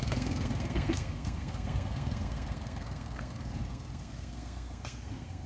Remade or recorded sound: remade